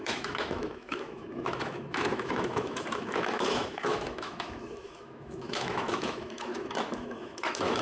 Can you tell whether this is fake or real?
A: fake